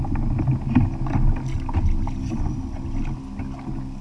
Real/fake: real